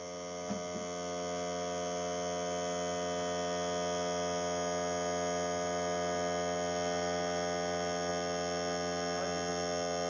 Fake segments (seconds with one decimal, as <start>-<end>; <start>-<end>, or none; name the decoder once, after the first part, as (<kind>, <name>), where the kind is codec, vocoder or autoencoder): none